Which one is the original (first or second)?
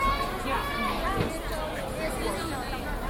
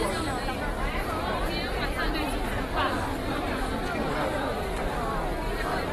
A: first